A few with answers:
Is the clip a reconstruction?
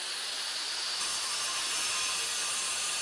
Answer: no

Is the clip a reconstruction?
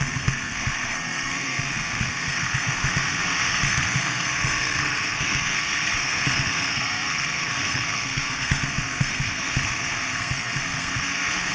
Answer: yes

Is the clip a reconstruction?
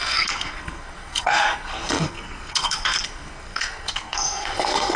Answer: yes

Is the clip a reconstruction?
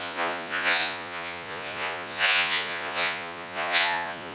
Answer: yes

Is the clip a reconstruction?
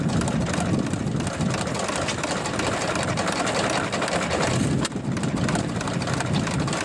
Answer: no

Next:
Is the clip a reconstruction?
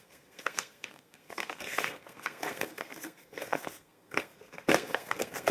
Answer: yes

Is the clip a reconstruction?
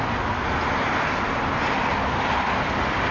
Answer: no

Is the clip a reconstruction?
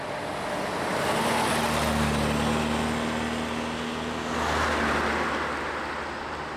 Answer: no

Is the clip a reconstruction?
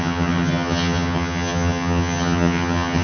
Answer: yes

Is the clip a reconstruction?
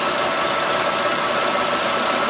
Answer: yes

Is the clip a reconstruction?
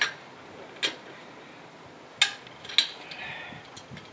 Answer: no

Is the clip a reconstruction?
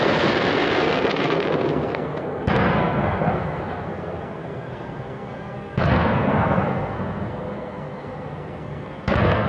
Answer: yes